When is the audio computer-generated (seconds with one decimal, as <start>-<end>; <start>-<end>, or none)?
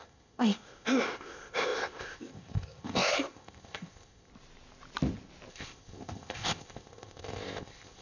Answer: 0.0-4.3; 5.5-8.0